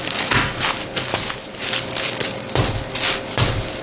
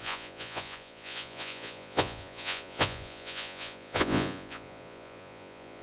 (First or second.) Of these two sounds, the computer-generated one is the second